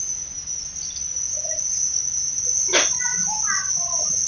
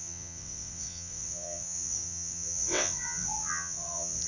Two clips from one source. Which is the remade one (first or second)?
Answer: second